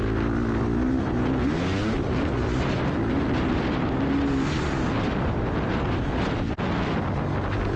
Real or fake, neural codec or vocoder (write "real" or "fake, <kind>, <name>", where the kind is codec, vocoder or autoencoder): real